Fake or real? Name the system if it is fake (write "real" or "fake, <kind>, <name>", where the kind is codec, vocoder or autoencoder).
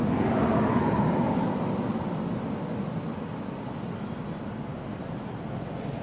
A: real